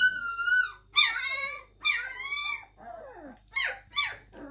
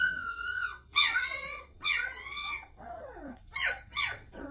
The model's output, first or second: second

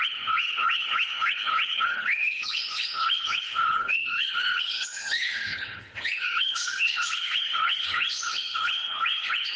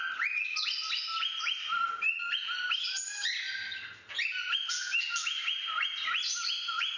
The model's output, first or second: first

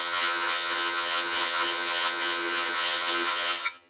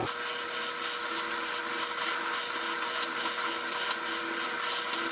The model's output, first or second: first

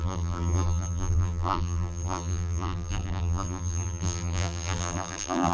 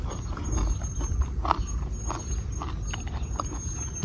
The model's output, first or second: first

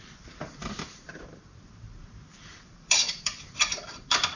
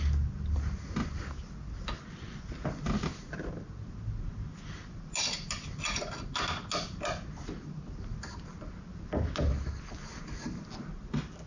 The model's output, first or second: first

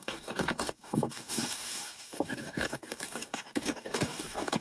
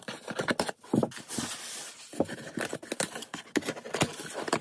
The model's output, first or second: first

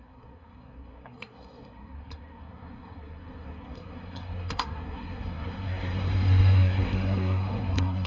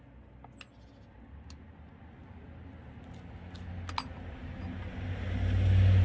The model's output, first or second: first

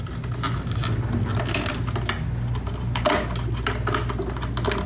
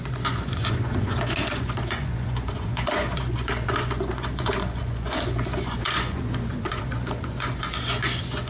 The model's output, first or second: second